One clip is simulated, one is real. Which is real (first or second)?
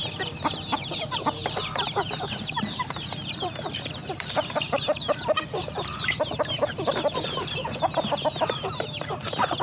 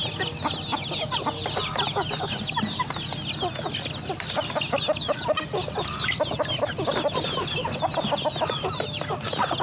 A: second